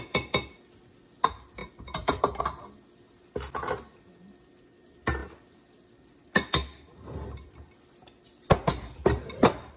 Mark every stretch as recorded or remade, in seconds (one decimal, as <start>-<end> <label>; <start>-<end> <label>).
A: 0.0-1.6 recorded; 1.6-2.4 remade; 2.4-9.8 recorded